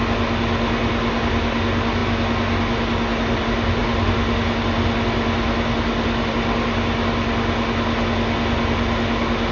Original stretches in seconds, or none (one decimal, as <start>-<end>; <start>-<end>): 0.0-9.5